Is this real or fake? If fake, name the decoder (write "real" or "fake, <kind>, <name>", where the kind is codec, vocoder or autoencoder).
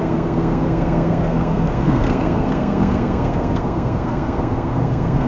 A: fake, codec, SNAC